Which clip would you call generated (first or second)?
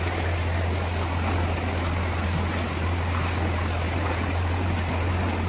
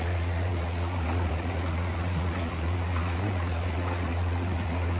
second